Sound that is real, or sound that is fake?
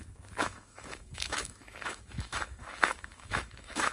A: fake